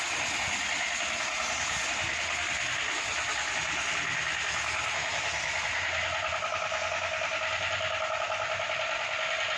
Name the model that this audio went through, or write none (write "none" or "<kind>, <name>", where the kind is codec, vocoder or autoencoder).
none